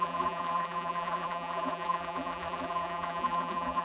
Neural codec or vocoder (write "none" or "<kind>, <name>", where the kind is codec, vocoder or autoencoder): vocoder, BigVGAN v2